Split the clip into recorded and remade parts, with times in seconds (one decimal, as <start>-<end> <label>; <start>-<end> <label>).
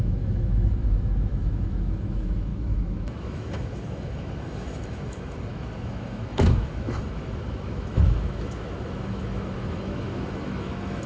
0.0-11.1 remade